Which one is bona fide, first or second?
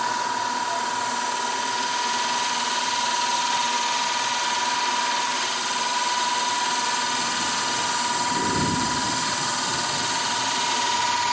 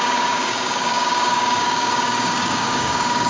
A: first